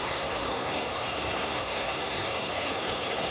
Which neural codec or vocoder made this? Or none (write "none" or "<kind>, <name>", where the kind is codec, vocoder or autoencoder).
codec, SNAC